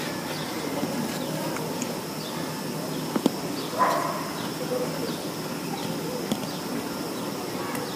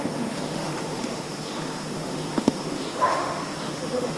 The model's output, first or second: second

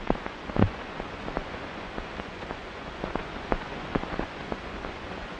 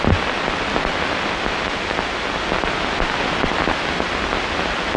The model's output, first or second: first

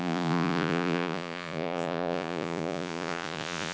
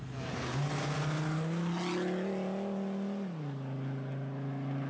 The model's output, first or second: first